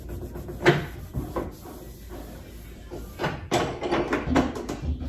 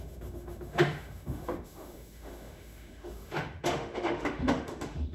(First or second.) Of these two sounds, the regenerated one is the second